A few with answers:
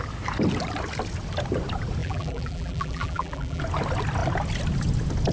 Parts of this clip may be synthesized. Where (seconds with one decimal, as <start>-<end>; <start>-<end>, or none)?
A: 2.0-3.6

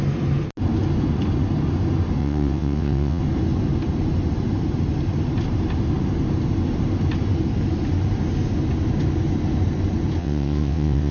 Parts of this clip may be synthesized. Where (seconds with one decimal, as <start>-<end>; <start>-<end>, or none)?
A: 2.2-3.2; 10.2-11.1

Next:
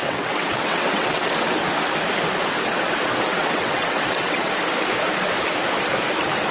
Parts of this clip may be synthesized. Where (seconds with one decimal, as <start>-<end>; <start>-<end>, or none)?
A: 0.0-1.2; 3.3-4.5